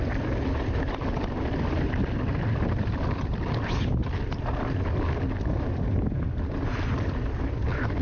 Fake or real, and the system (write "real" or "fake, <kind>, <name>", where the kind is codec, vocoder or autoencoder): fake, vocoder, BigVGAN v2